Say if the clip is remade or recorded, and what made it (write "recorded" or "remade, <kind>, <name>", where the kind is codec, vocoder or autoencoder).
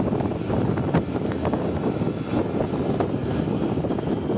recorded